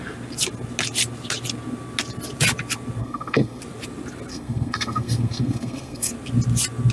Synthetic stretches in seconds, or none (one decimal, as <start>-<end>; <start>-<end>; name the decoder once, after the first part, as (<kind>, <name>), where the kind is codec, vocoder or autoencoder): 3.0-3.6 (codec, SNAC); 4.3-6.1